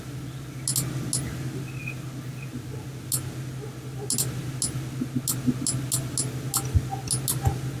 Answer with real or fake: real